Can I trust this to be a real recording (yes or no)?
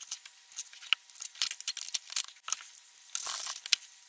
yes